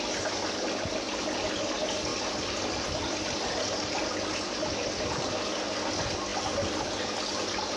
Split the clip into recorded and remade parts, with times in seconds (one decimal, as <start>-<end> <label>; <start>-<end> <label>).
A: 0.0-7.8 recorded